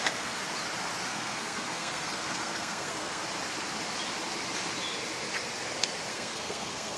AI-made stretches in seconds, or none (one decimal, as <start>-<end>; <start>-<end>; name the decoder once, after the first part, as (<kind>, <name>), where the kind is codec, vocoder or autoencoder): 0.0-0.4 (codec, SNAC); 1.1-3.2; 6.1-7.0